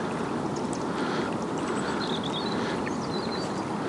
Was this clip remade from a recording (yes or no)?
no